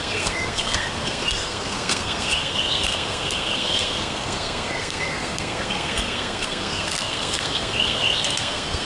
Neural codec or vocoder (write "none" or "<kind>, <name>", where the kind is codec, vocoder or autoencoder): codec, SNAC